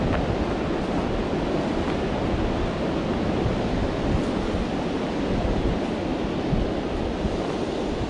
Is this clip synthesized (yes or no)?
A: no